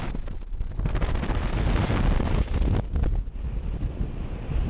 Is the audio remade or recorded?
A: recorded